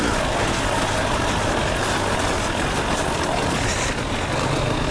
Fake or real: real